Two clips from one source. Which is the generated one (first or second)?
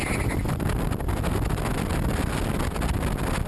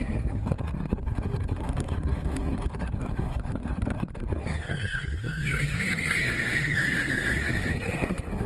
second